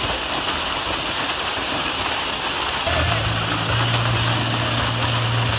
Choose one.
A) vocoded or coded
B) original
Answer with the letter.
B